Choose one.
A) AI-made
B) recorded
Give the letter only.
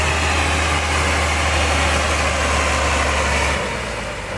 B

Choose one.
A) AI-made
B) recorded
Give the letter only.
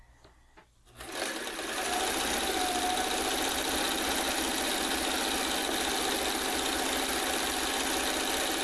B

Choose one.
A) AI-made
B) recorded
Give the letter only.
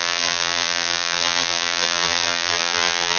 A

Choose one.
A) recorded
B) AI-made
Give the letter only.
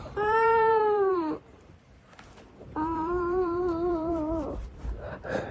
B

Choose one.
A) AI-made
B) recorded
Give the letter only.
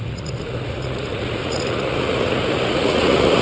A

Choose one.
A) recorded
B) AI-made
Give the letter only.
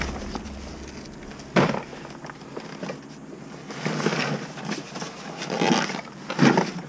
A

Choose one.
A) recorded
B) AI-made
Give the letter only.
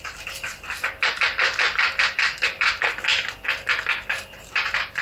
A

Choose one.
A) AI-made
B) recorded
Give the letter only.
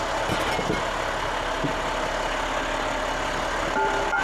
B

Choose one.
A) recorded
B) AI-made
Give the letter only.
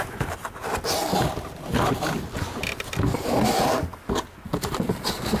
A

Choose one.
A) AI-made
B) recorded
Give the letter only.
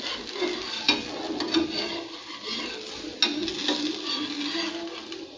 B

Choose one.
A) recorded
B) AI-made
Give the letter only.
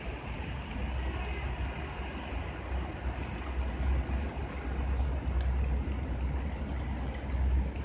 A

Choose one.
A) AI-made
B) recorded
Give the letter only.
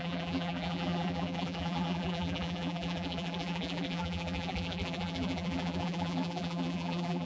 A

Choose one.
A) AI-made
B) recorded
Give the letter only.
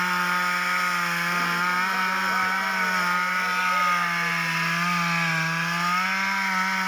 B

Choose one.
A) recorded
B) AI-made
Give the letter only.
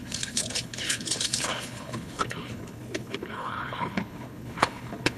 B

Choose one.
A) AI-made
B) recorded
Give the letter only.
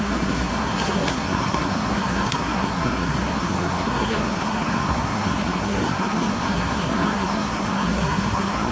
A